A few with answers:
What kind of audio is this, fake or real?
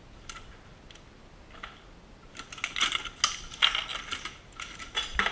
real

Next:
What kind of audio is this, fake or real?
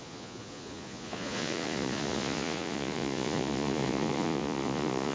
fake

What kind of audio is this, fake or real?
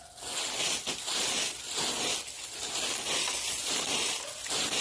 real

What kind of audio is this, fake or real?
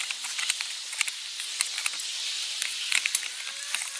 real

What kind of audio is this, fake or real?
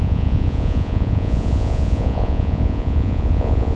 fake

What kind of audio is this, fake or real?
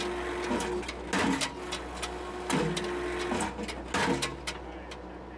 real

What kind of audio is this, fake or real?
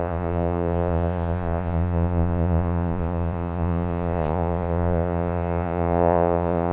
fake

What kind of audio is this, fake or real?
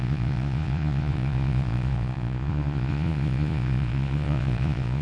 fake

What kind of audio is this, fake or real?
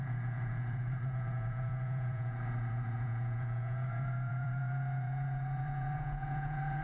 fake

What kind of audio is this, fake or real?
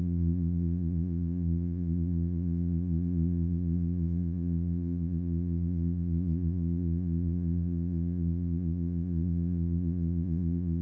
fake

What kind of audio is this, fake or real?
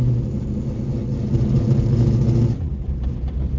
real